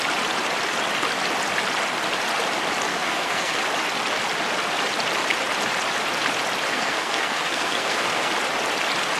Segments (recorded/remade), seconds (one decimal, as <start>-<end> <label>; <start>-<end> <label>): 0.0-2.9 recorded; 2.9-3.6 remade; 3.6-6.7 recorded; 6.7-8.3 remade; 8.3-9.2 recorded